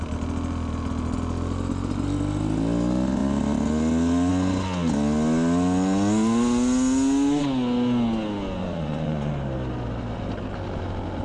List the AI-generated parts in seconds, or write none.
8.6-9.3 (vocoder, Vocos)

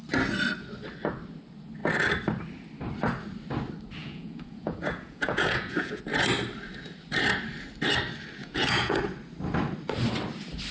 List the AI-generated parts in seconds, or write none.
4.0-6.0 (vocoder, Vocos); 8.4-9.0